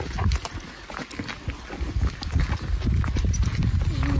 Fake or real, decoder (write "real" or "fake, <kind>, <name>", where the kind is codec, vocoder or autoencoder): real